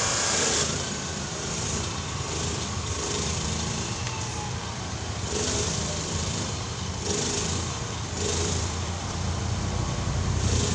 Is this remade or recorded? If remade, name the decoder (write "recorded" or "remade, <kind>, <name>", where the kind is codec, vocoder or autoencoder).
remade, vocoder, BigVGAN v2